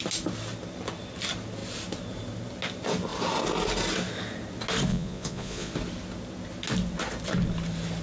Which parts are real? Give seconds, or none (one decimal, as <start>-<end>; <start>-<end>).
0.0-4.9; 5.7-8.0